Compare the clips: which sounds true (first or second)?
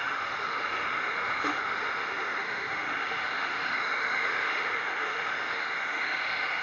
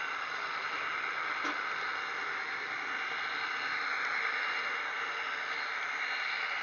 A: second